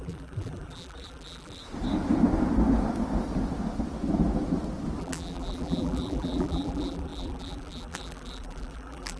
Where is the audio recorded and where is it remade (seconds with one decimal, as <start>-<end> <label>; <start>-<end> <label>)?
0.0-1.6 remade; 1.6-5.0 recorded; 5.0-9.2 remade